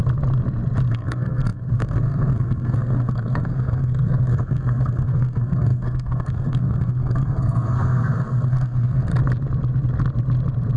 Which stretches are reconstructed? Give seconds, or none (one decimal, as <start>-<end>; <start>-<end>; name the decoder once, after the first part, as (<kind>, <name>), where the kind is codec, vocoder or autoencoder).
0.9-9.1 (codec, SNAC)